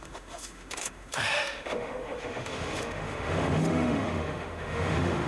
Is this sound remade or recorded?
remade